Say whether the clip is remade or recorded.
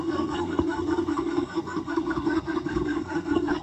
remade